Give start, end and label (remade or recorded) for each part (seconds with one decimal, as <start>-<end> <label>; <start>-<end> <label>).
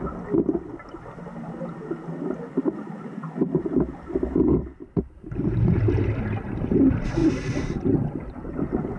0.0-9.0 recorded